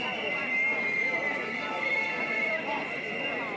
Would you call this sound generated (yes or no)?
no